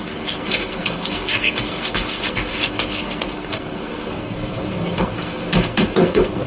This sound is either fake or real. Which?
fake